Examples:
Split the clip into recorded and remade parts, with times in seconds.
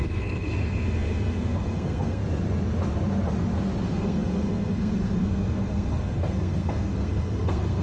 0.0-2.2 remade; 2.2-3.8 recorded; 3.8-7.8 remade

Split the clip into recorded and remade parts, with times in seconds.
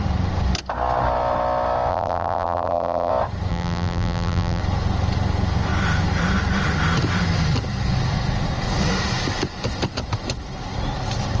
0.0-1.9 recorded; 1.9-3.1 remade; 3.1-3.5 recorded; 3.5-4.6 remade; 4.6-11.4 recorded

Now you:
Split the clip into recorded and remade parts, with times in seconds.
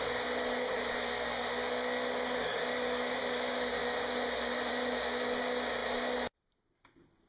0.0-7.3 recorded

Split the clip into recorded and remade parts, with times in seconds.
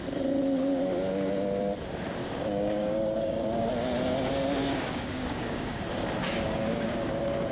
0.0-2.2 recorded; 2.2-3.7 remade; 3.7-4.6 recorded; 4.6-5.8 remade; 5.8-6.2 recorded; 6.2-7.1 remade; 7.1-7.5 recorded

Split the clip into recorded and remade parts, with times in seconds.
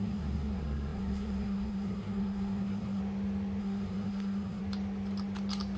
0.0-3.0 remade; 3.0-3.6 recorded; 3.6-4.6 remade; 4.6-5.8 recorded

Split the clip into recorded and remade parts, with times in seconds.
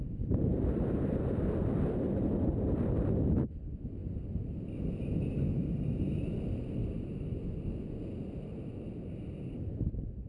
0.0-10.3 recorded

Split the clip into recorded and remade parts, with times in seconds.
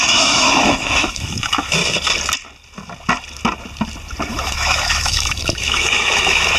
0.0-1.8 remade; 1.8-4.3 recorded; 4.3-6.6 remade